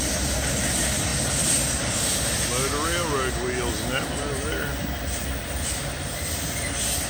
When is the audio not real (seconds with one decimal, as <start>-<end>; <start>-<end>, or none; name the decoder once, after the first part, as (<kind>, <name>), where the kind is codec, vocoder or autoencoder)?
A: none